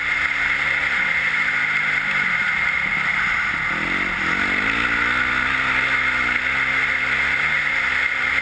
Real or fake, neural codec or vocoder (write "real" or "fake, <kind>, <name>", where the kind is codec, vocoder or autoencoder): real